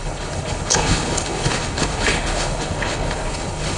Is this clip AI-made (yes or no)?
yes